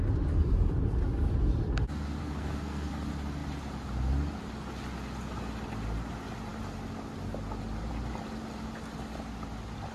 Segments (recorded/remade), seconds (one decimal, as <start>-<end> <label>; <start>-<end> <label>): 0.0-2.2 recorded; 2.2-2.9 remade; 2.9-9.9 recorded